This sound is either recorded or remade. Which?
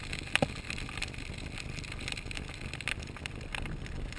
recorded